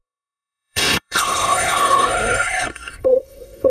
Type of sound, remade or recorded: remade